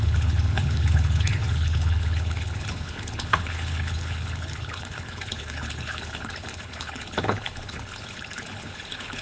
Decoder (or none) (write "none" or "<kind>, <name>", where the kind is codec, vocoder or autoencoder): codec, HILCodec